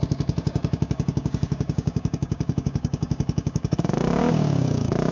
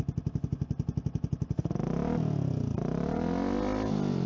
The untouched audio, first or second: second